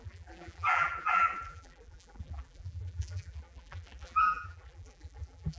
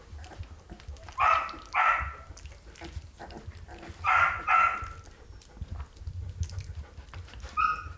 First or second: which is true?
second